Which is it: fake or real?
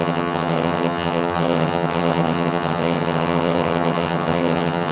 fake